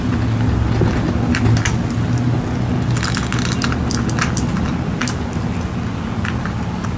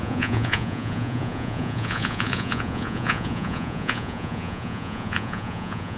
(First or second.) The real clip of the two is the first